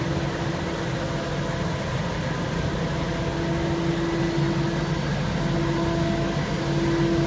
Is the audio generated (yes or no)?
no